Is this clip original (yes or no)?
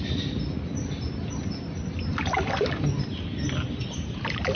yes